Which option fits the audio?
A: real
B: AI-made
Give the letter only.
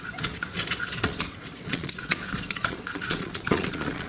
B